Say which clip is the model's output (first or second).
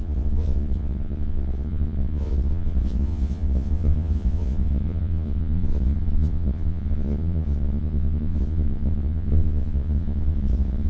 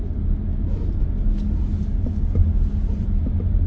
first